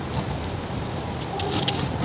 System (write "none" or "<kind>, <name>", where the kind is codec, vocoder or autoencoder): none